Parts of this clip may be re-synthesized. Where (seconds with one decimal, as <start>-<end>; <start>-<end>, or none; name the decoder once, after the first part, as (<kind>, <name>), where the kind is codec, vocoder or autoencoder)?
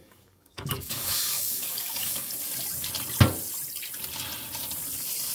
0.0-2.3 (codec, DAC)